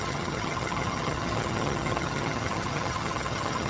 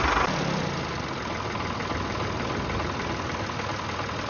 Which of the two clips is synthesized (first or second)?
first